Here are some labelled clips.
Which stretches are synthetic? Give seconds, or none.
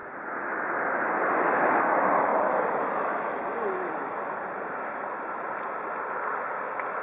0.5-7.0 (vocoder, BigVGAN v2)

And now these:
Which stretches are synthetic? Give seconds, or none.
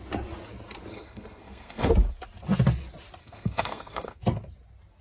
0.9-1.9 (codec, SNAC); 3.2-4.2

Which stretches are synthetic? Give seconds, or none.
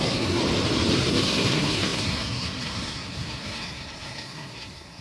0.0-0.4 (codec, SNAC); 1.1-5.0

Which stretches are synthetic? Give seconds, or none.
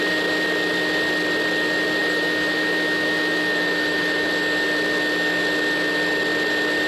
2.0-4.3 (autoencoder, DAC-VAE)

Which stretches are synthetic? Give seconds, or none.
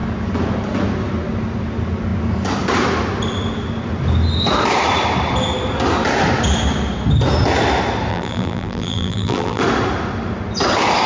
8.1-9.6 (vocoder, BigVGAN v2)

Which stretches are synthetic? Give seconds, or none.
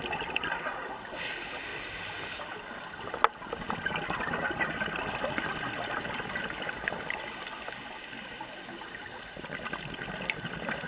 none